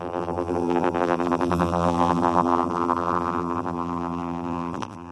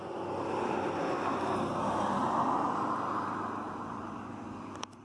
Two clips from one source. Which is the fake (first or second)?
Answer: first